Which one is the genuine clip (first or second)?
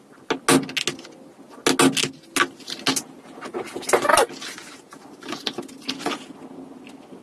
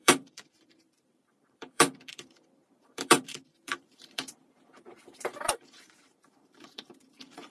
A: first